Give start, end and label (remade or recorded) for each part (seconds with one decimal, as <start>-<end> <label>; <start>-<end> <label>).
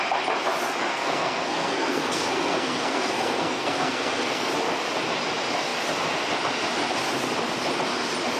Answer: 0.0-0.9 recorded; 0.9-4.5 remade; 4.5-8.4 recorded